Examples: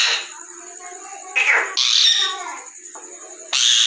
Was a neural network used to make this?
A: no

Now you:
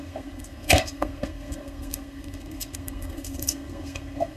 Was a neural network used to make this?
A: yes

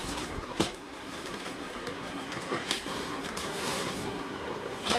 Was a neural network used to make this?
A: yes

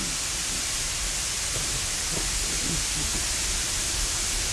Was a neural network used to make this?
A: no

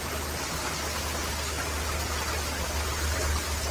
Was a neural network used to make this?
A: no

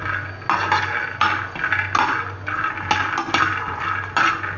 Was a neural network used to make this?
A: no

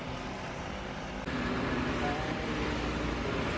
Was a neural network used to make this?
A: no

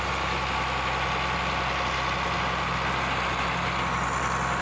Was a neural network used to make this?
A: no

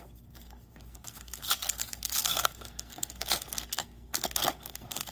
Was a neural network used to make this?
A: yes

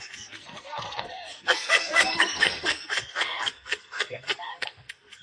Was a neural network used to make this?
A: yes